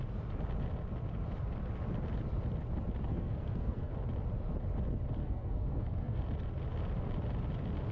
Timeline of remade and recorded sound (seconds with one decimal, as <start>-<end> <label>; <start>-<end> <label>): 0.0-3.1 recorded; 3.1-3.9 remade; 3.9-5.2 recorded; 5.2-6.2 remade; 6.2-7.9 recorded